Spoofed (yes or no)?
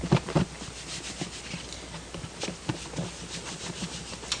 no